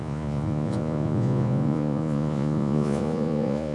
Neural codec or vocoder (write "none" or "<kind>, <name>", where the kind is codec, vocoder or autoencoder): vocoder, Vocos